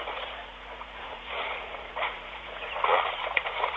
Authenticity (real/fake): fake